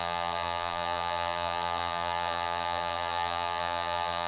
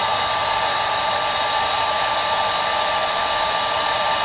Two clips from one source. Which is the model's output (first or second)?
first